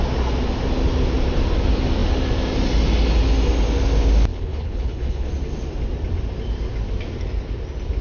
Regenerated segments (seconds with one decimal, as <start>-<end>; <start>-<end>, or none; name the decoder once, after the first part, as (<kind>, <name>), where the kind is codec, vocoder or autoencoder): 4.3-5.3 (codec, HILCodec)